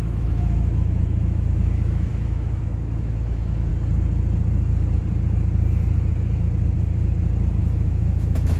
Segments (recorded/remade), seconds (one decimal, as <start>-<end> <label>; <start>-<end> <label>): 0.0-3.7 remade; 3.7-7.6 recorded; 7.6-8.6 remade